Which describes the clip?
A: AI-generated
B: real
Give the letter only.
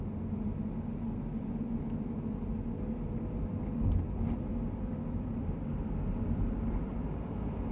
B